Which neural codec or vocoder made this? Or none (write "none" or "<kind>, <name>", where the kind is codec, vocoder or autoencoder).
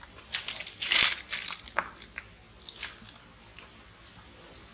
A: none